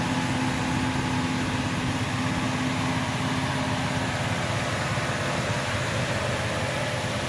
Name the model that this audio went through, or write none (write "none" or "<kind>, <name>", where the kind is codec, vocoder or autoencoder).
none